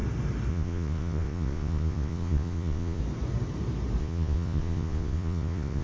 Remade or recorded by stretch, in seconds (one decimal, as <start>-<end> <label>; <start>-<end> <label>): 0.0-0.5 recorded; 0.5-3.0 remade; 3.0-4.0 recorded; 4.0-5.8 remade